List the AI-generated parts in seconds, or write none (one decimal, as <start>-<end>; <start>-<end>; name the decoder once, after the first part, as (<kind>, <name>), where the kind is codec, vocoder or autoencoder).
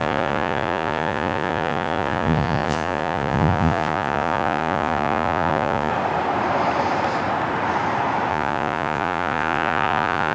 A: 0.0-5.9 (vocoder, Vocos); 8.3-10.3